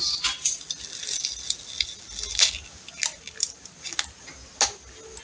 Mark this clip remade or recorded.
recorded